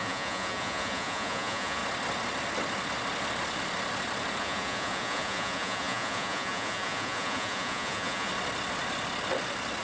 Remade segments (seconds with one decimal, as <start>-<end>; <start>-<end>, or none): 0.0-1.8; 4.4-8.3